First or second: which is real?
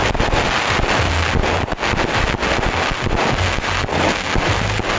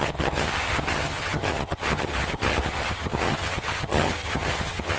first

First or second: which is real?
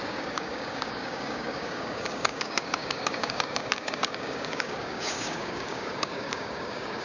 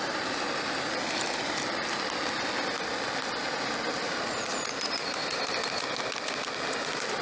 second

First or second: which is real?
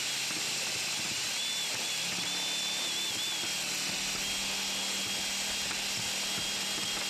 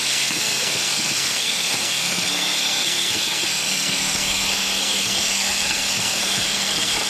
first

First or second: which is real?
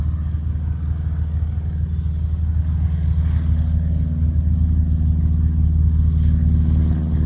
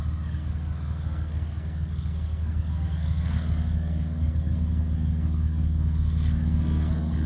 first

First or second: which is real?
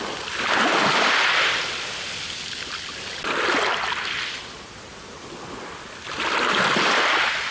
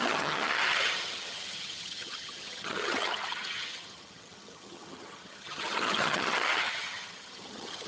first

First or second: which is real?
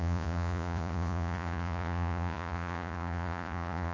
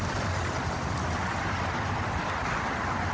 second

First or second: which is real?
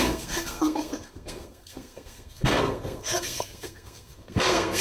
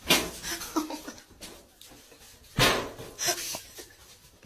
second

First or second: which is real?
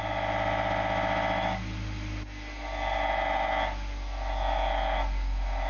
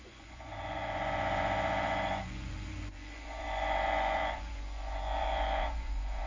first